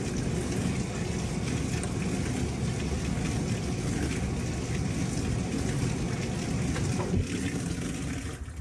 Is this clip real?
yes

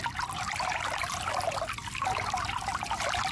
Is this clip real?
yes